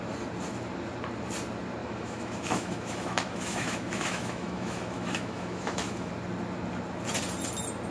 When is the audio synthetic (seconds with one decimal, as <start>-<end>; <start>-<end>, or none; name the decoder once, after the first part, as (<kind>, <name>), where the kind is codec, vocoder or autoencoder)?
1.8-6.1 (autoencoder, DAC-VAE)